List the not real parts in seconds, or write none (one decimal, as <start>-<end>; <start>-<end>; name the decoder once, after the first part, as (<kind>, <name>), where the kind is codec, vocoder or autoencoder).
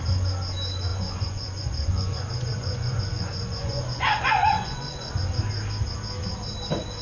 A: 0.9-5.1 (vocoder, Vocos)